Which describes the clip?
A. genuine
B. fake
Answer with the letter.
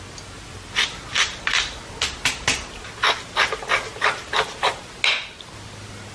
A